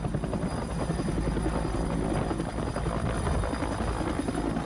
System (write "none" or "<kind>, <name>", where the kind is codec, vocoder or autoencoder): none